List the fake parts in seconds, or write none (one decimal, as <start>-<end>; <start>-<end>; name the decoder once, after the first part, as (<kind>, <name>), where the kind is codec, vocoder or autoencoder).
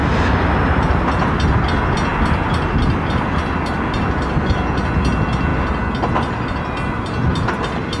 none